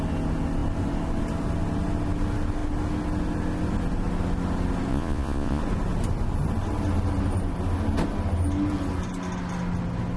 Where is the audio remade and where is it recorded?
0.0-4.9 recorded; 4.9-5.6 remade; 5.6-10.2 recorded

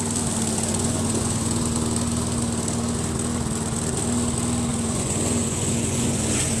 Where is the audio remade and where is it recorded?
0.0-0.7 recorded; 0.7-1.6 remade; 1.6-4.7 recorded; 4.7-6.6 remade

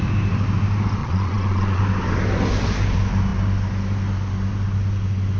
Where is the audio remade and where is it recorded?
0.0-1.0 recorded; 1.0-1.8 remade; 1.8-5.4 recorded

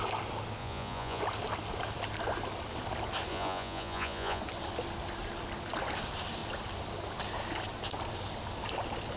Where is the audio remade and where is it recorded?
0.0-0.6 recorded; 0.6-1.2 remade; 1.2-3.3 recorded; 3.3-4.4 remade; 4.4-9.2 recorded

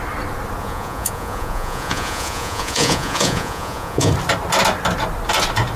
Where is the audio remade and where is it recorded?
0.0-0.6 recorded; 0.6-4.1 remade; 4.1-5.8 recorded

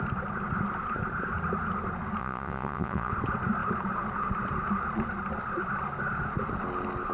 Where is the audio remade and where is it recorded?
0.0-2.2 recorded; 2.2-3.1 remade; 3.1-7.1 recorded